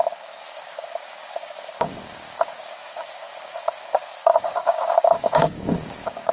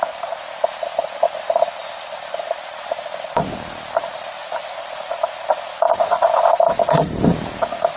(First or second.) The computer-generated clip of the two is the first